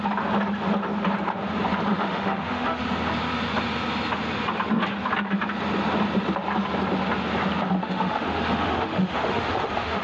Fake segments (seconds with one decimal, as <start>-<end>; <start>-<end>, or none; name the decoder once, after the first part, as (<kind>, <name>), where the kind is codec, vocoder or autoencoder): 1.9-2.8 (autoencoder, DAC-VAE); 7.8-10.0